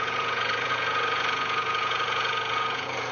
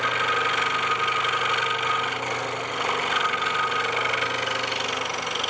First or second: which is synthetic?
first